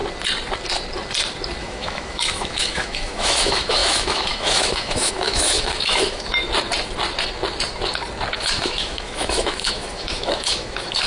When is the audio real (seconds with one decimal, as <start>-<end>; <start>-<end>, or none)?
0.0-1.6; 6.3-8.3